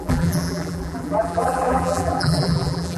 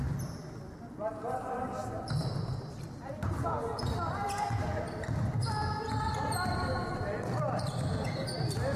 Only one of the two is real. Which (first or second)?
second